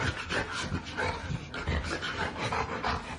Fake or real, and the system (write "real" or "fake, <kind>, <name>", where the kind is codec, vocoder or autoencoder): real